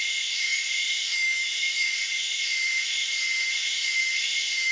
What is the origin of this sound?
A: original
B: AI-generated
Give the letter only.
B